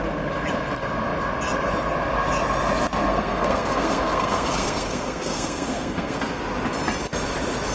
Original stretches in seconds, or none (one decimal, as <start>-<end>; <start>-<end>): 0.0-3.1; 6.4-7.7